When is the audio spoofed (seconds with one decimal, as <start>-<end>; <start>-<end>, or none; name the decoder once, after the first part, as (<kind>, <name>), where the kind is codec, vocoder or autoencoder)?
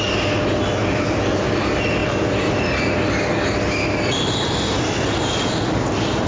0.8-1.5 (vocoder, BigVGAN v2); 2.0-2.9